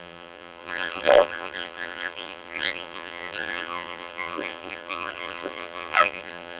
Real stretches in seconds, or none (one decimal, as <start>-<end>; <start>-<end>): none